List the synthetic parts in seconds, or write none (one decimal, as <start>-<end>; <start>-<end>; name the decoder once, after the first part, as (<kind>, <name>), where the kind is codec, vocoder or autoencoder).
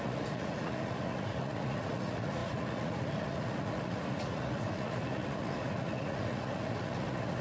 0.0-7.4 (vocoder, Vocos)